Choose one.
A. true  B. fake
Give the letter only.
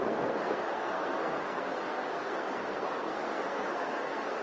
B